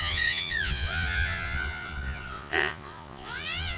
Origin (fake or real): fake